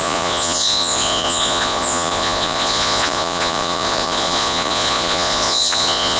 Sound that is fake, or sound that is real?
fake